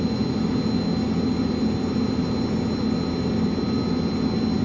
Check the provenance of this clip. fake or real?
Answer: real